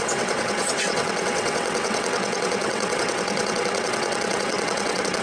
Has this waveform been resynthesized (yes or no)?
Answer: yes